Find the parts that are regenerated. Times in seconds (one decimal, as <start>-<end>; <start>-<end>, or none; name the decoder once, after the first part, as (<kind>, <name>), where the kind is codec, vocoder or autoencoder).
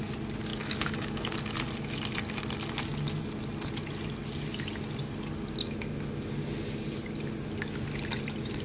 0.5-1.4 (codec, DAC)